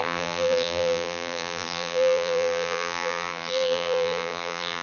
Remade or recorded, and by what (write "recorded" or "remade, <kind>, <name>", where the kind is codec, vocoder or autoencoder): remade, vocoder, BigVGAN v2